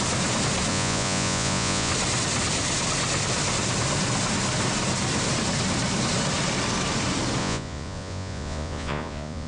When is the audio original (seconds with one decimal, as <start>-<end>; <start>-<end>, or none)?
0.0-0.7; 1.9-7.4